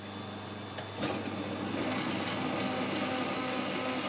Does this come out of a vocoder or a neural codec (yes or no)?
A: no